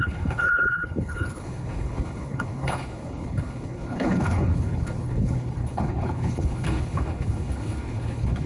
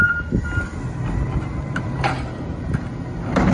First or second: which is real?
second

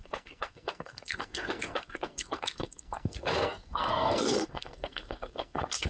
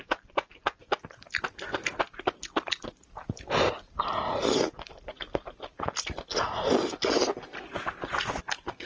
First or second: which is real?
second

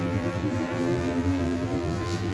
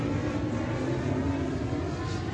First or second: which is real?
second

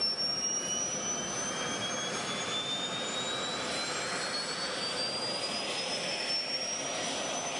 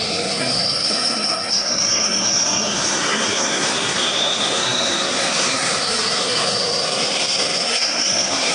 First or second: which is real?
first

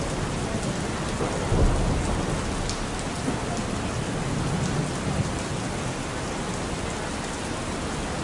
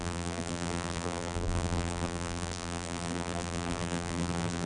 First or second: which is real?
first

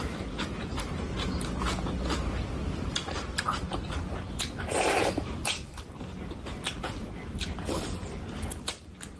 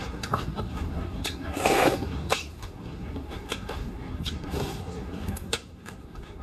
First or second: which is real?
first